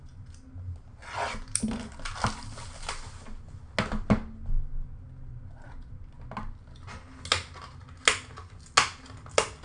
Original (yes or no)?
yes